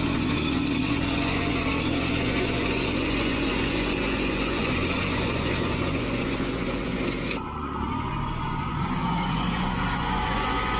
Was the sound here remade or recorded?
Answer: remade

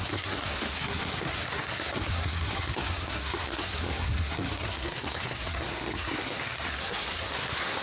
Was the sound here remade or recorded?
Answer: remade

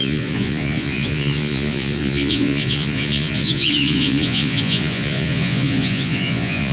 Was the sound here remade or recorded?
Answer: remade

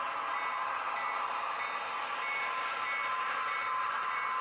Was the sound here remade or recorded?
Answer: recorded